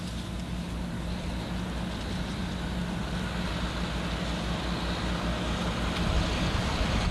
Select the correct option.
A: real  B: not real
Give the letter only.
A